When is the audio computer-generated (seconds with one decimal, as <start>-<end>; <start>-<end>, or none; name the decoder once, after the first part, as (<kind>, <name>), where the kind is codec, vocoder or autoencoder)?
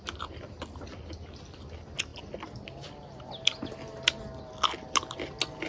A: none